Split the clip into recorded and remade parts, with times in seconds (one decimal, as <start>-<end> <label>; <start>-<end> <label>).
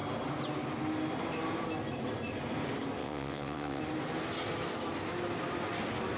0.0-3.0 recorded; 3.0-3.8 remade; 3.8-6.2 recorded